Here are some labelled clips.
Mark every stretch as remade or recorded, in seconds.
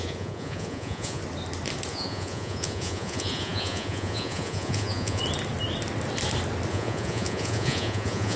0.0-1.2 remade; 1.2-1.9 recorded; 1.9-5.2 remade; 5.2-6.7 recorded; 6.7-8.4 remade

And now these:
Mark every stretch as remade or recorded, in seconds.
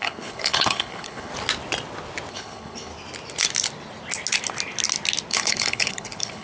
0.0-1.3 remade; 1.3-2.3 recorded; 2.3-2.9 remade; 2.9-5.3 recorded; 5.3-6.4 remade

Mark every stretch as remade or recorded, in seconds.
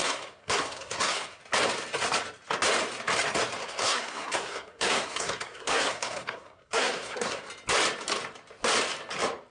0.0-1.4 remade; 1.4-3.6 recorded; 3.6-7.5 remade; 7.5-9.5 recorded